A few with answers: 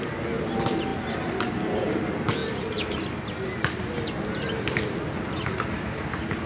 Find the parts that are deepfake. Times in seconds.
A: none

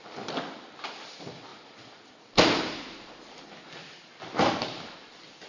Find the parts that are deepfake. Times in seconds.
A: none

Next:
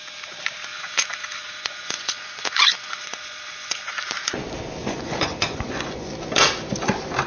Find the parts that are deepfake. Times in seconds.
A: 0.7-3.9 (vocoder, Vocos); 4.8-6.1